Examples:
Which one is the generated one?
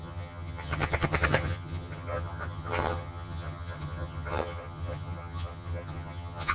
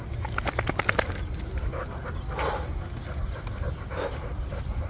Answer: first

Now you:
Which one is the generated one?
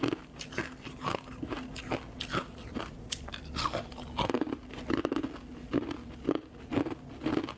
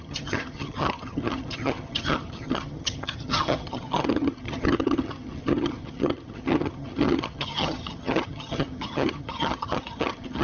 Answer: second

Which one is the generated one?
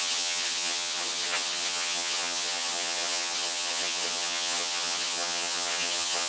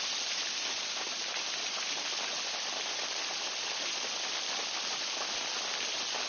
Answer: first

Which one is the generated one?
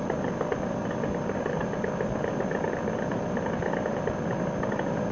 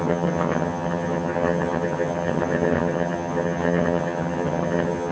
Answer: second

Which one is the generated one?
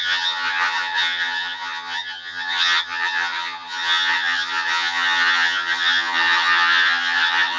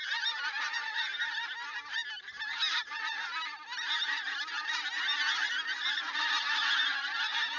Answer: first